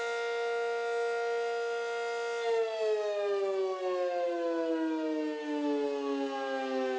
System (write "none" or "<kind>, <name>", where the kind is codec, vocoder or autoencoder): none